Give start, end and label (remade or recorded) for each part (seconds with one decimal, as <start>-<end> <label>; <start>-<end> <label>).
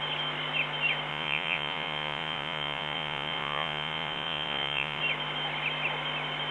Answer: 0.0-1.1 recorded; 1.1-5.0 remade; 5.0-6.5 recorded